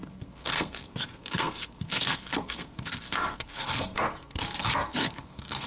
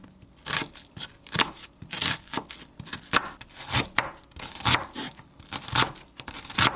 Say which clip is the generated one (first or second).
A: first